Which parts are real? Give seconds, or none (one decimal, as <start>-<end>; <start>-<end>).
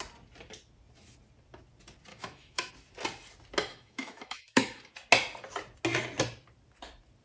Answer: 0.0-2.1; 2.7-3.7; 4.8-7.2